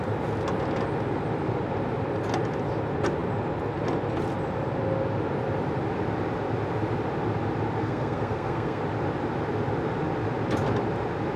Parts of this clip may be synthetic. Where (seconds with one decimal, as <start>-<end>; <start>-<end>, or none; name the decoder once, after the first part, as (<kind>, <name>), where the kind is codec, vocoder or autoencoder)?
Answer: 7.8-8.8 (codec, SNAC)